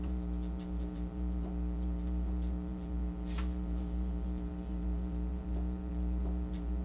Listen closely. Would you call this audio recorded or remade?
remade